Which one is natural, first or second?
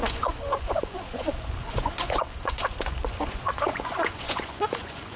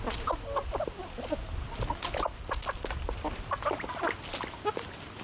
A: second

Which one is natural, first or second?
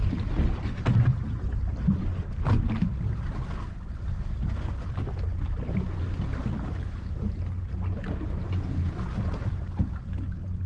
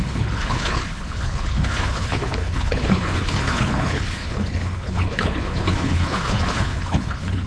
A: first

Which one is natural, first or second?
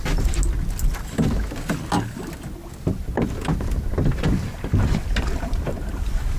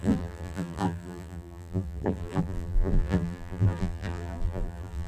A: first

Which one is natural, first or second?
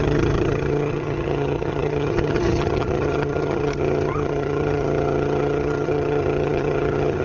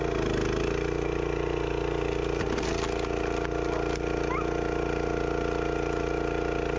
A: second